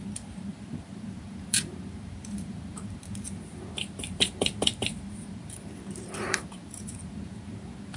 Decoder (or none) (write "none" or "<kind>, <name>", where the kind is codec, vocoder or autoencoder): vocoder, BigVGAN v2